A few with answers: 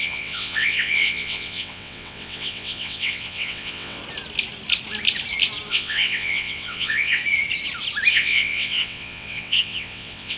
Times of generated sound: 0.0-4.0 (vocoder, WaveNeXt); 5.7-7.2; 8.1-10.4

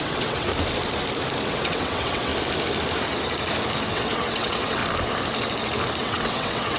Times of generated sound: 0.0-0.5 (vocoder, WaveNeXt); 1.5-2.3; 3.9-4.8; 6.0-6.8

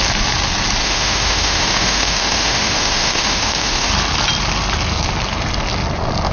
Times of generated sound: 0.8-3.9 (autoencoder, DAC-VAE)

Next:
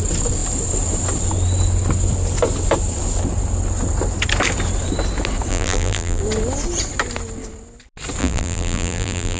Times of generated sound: 5.5-6.2 (vocoder, BigVGAN v2); 8.2-9.4

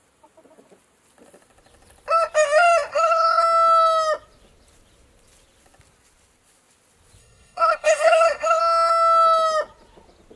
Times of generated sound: 2.9-3.4 (codec, SNAC); 7.2-8.6

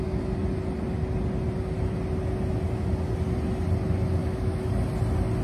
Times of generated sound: 4.2-4.7 (autoencoder, DAC-VAE)

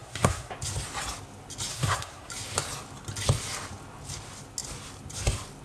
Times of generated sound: 0.0-0.5 (codec, SNAC); 1.7-2.3